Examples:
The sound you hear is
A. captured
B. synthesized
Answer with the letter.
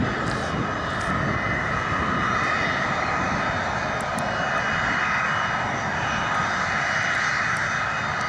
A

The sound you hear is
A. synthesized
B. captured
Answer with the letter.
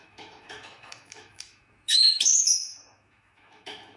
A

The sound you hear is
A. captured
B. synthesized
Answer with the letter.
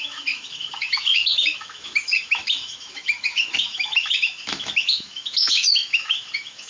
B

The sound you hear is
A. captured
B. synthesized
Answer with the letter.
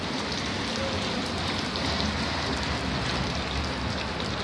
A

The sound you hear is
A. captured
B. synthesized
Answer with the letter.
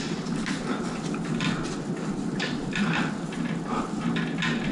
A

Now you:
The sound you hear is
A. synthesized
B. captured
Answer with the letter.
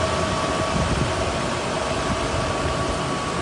B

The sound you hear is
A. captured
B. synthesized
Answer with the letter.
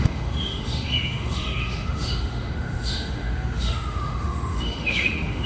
B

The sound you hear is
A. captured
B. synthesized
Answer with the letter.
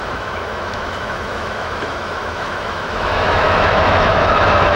B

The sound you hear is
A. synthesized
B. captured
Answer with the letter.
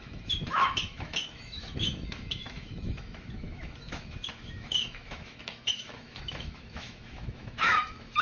A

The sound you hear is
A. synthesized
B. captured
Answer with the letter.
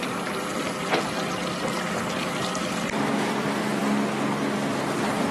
B